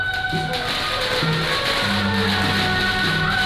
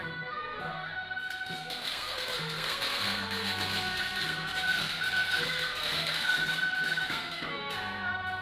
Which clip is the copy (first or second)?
second